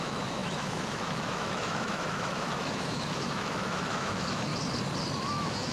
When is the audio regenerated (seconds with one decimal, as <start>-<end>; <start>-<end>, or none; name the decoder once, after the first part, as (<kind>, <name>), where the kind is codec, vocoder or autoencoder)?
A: 0.0-4.5 (autoencoder, DAC-VAE); 5.2-5.7